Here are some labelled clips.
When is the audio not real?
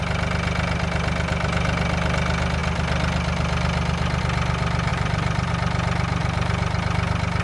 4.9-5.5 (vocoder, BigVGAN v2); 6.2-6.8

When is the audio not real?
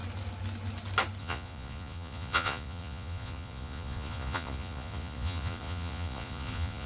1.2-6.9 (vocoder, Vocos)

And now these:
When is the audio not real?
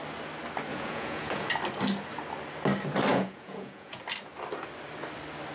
0.7-1.5 (vocoder, Vocos); 3.1-4.0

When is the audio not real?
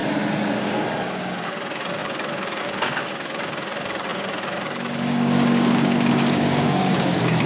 0.6-7.5 (codec, DAC)